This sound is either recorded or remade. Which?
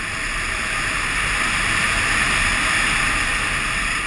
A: recorded